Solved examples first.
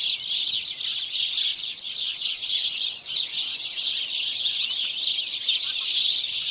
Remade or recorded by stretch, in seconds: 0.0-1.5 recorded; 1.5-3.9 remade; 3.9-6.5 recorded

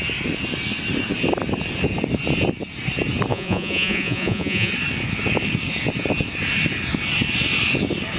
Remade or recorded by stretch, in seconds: 0.0-3.3 recorded; 3.3-4.7 remade; 4.7-8.2 recorded

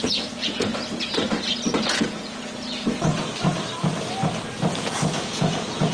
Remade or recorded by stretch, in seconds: 0.0-0.7 remade; 0.7-1.8 recorded; 1.8-3.1 remade; 3.1-4.8 recorded; 4.8-5.9 remade

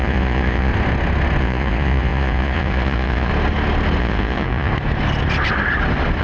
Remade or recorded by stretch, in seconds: 0.0-0.7 remade; 0.7-1.4 recorded; 1.4-3.3 remade; 3.3-4.0 recorded; 4.0-4.7 remade; 4.7-6.2 recorded